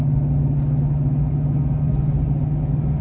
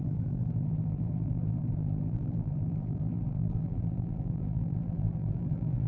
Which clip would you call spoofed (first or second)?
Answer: second